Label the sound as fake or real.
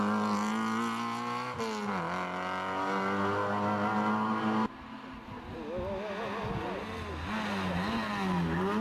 real